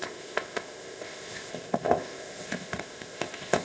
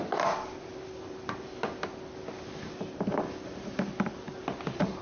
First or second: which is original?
second